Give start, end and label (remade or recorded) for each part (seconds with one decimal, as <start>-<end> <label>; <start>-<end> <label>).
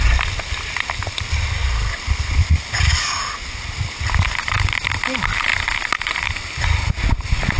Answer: 0.0-1.6 recorded; 1.6-2.8 remade; 2.8-7.6 recorded